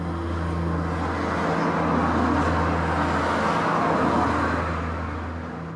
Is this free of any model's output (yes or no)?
yes